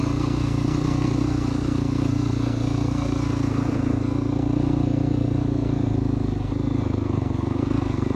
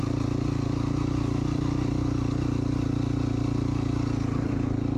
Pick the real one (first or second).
second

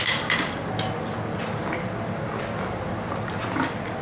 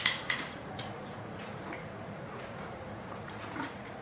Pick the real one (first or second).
first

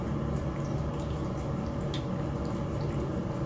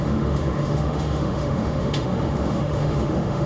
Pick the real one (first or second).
first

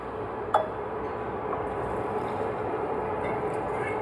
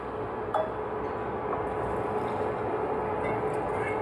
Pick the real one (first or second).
second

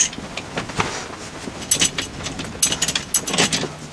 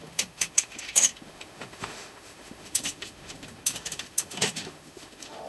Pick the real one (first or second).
first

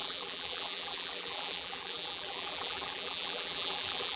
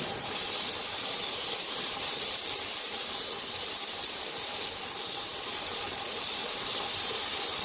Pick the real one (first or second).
second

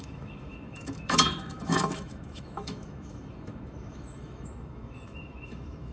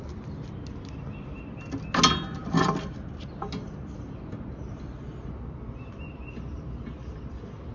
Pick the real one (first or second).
second